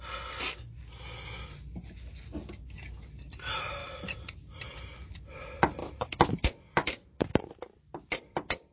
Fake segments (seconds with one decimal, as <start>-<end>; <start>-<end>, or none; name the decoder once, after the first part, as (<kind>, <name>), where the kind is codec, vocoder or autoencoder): 3.8-4.8 (vocoder, BigVGAN v2); 5.8-7.5